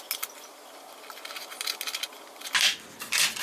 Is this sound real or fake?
real